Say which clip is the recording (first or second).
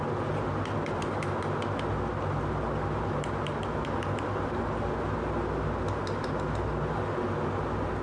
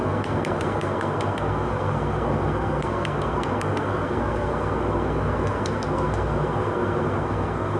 first